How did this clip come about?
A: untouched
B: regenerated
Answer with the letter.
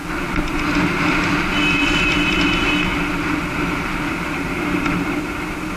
A